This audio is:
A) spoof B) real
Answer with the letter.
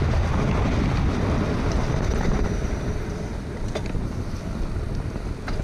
B